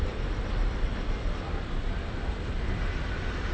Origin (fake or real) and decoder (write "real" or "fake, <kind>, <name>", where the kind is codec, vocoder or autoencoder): real